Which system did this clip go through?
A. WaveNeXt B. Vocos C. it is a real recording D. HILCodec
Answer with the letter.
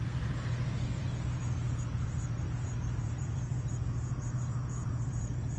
B